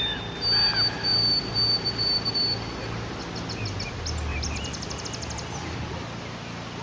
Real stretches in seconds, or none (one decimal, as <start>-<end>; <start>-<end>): 0.0-1.1; 2.3-4.3; 5.0-6.8